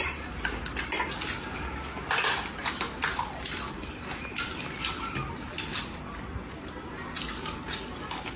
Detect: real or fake real